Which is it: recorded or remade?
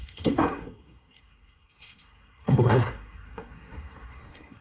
remade